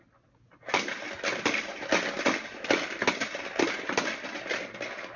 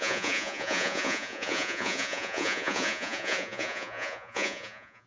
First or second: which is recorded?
first